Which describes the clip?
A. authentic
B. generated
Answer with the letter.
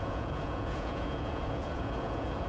B